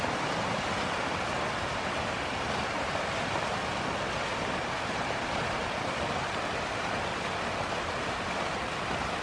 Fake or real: real